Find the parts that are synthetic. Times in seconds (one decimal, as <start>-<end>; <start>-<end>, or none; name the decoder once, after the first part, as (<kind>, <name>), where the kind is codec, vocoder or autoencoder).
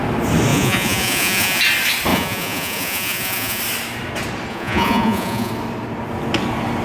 0.5-1.6 (vocoder, Vocos); 2.1-3.6; 4.5-5.5